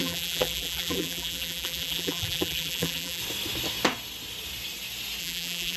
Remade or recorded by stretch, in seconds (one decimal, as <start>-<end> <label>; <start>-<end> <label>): 0.0-3.2 remade; 3.2-5.2 recorded; 5.2-5.8 remade